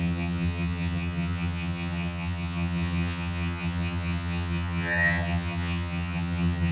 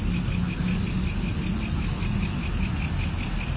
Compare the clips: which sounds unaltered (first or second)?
second